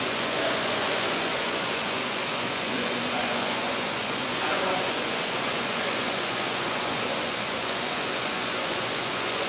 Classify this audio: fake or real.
fake